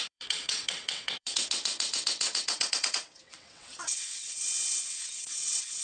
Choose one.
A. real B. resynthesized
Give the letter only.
B